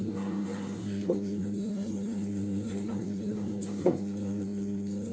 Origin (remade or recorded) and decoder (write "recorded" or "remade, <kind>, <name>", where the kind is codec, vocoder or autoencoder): remade, codec, SNAC